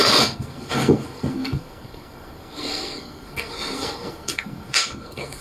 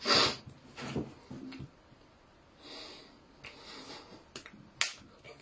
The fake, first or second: first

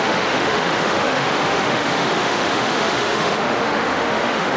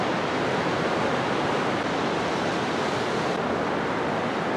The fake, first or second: first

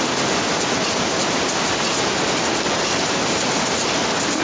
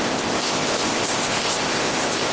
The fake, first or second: second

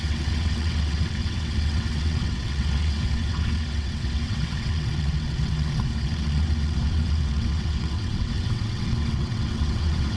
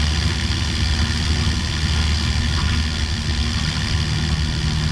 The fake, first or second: first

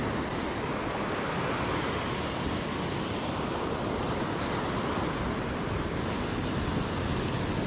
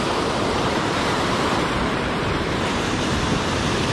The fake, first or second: second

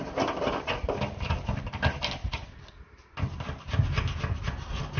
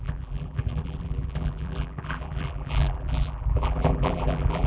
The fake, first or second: second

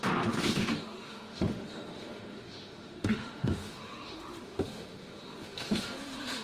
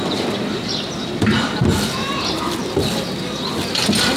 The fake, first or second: first